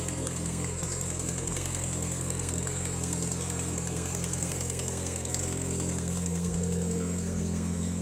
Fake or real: fake